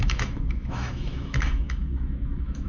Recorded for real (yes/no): no